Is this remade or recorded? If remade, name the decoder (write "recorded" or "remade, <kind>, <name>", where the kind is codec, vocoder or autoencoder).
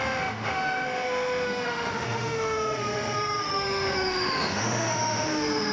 remade, autoencoder, DAC-VAE